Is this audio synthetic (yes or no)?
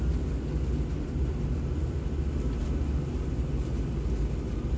no